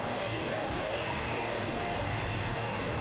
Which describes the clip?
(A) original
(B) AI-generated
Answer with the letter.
B